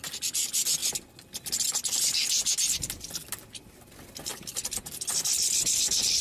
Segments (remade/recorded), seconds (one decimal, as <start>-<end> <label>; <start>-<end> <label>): 0.0-6.2 recorded